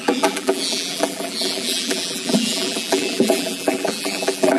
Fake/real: fake